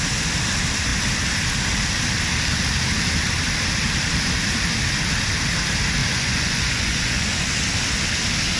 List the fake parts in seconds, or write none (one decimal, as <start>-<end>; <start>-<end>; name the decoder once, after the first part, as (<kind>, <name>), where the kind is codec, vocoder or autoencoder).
6.0-7.5 (vocoder, Vocos)